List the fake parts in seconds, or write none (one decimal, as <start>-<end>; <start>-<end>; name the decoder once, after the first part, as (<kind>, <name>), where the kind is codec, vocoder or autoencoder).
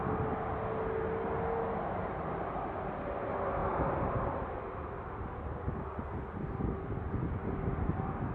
none